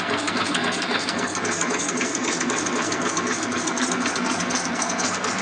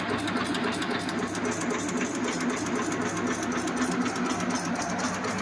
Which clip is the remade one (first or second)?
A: first